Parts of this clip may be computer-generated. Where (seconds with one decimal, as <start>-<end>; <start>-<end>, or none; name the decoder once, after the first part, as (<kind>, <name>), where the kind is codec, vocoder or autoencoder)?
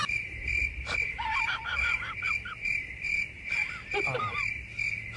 0.0-0.6 (vocoder, BigVGAN v2)